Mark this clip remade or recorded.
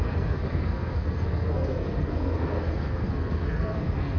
remade